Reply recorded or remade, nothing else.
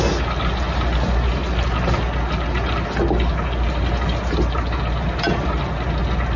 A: recorded